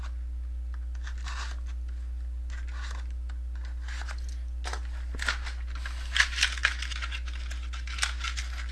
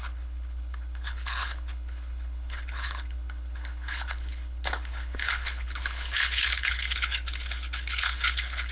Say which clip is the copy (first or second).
second